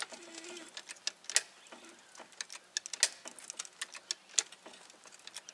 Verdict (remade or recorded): recorded